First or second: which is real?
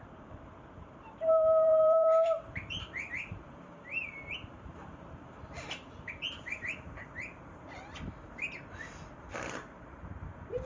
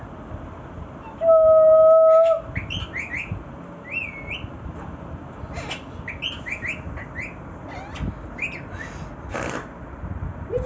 second